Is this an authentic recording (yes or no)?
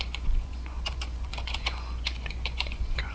no